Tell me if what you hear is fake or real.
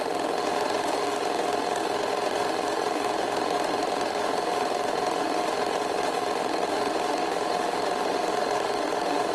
fake